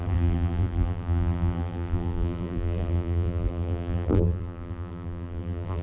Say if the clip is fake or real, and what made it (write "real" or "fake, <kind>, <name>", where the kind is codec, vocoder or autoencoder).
fake, vocoder, BigVGAN v2